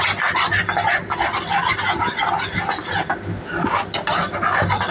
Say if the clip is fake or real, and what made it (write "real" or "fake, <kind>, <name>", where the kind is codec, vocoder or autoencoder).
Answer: real